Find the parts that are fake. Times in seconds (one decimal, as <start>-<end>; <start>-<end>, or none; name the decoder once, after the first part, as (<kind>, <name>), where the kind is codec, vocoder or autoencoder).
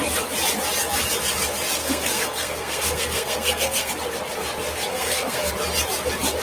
1.8-3.9 (codec, SNAC); 4.9-5.5